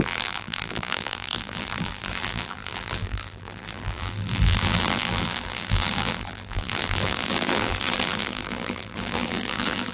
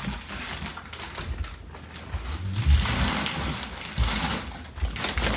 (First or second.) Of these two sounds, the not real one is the first